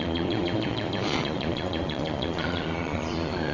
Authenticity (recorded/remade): remade